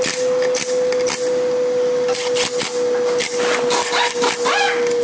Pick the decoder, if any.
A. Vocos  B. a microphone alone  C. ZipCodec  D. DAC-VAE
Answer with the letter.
B